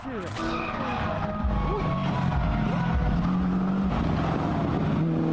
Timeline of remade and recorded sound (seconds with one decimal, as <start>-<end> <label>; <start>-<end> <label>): 0.0-5.3 recorded